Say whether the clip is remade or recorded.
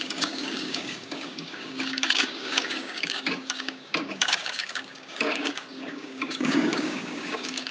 remade